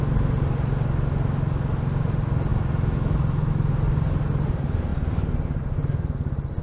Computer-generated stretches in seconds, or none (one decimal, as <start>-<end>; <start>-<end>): none